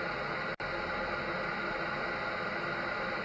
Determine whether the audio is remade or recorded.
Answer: recorded